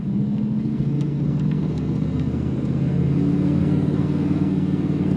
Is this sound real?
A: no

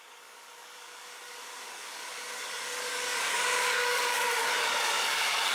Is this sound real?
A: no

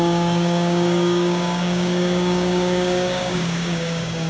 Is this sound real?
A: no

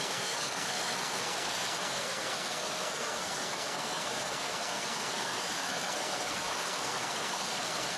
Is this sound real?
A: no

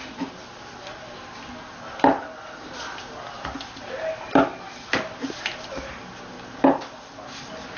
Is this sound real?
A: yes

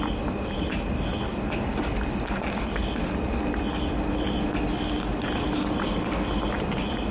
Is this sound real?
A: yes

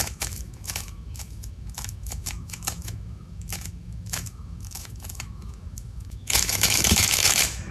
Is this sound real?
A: no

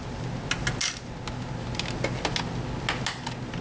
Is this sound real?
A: yes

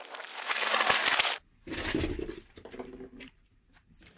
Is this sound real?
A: yes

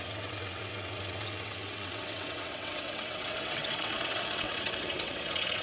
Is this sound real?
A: no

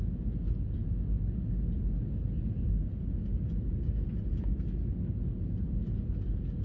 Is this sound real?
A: yes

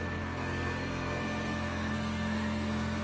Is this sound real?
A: no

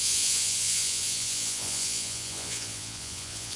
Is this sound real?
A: no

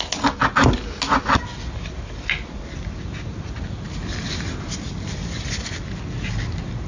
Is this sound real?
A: yes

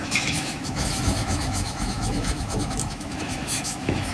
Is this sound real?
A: no